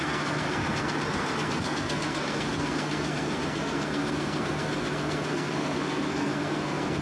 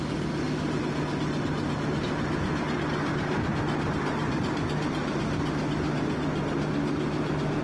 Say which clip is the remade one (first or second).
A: first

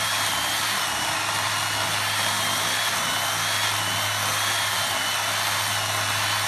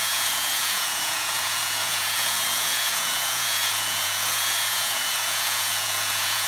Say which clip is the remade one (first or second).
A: second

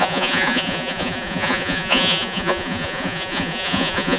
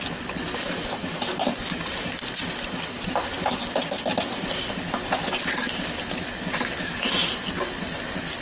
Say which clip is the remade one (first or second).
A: first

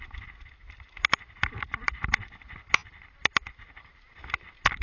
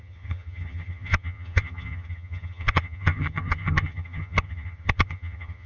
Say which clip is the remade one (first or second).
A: second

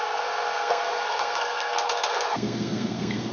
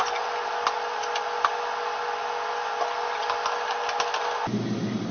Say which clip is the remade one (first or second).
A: first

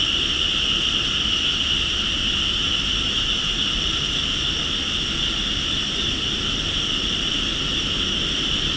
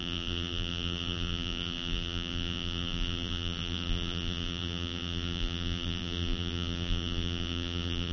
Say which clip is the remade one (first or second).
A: second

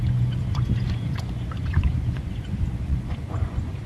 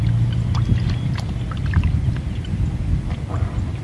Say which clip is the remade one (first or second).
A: first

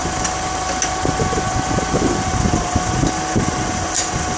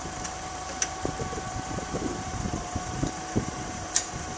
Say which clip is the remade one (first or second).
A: second